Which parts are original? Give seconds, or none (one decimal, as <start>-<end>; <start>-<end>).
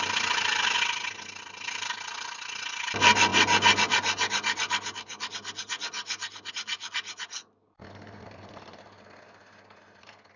0.0-10.4